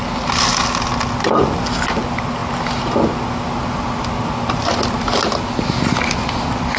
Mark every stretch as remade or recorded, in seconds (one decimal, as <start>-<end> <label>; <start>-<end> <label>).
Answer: 0.0-6.8 recorded